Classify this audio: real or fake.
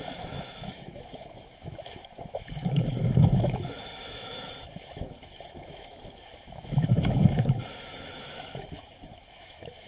fake